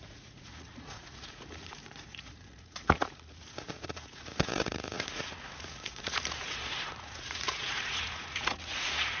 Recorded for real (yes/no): no